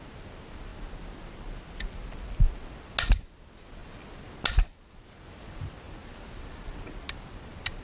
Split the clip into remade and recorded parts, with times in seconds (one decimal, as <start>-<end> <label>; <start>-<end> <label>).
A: 0.0-7.8 recorded